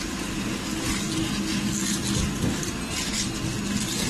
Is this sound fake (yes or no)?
no